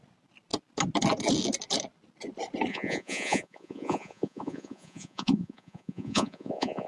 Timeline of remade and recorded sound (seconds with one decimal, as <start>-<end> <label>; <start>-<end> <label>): 0.0-2.7 recorded; 2.7-6.9 remade